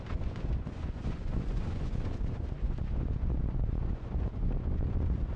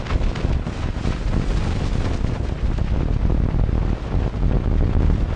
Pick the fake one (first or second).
first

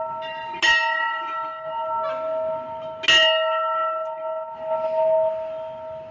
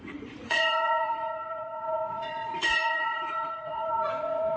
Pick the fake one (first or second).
second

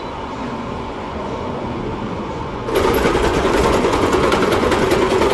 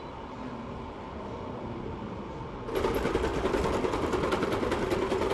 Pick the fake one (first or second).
first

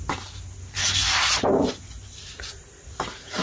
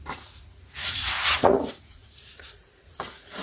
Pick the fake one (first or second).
second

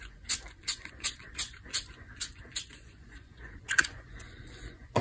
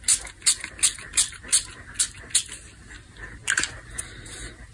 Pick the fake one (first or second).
first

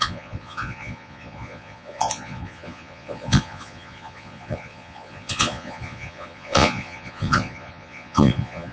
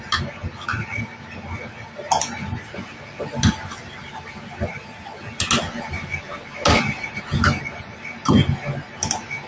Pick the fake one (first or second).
first